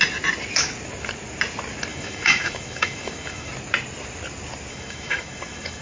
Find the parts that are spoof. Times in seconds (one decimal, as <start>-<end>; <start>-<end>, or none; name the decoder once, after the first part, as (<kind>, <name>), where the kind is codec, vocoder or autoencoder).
1.9-3.5 (autoencoder, DAC-VAE); 4.7-5.8